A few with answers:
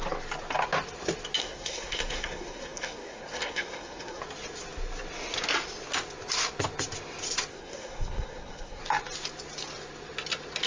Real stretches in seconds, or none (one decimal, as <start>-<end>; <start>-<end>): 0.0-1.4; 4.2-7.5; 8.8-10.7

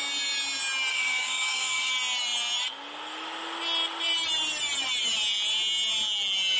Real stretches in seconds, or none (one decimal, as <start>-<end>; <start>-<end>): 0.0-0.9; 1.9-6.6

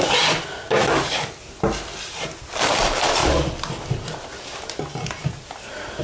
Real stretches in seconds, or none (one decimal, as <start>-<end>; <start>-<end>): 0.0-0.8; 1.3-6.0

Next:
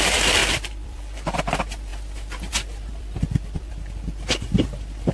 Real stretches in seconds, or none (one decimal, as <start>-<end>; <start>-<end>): 0.0-0.4; 1.4-2.9; 3.7-5.1

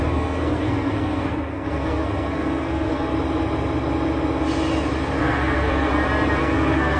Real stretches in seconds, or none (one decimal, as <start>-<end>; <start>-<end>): 3.1-5.2; 5.9-6.4

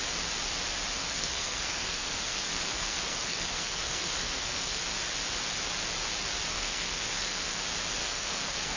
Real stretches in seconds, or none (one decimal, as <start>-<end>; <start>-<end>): 0.0-1.0; 4.8-6.5; 7.6-8.0

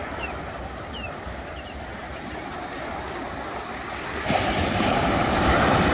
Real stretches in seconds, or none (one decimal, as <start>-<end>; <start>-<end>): 0.0-5.9